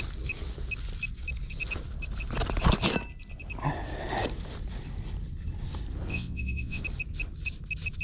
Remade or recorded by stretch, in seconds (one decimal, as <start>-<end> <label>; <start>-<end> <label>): 0.0-6.1 recorded; 6.1-6.8 remade; 6.8-8.0 recorded